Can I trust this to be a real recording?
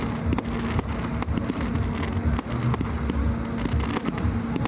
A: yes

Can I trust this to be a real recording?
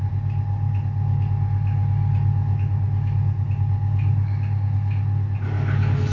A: yes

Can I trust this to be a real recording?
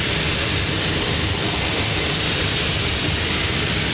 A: no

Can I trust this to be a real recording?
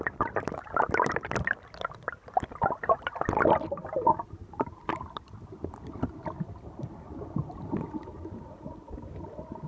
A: no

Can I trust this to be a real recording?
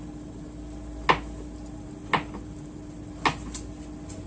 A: yes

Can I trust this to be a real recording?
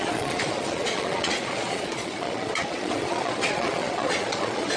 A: no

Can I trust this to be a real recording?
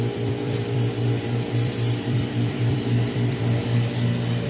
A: no